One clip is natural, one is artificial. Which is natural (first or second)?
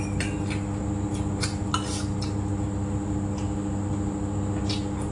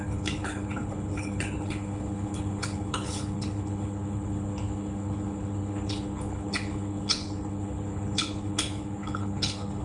first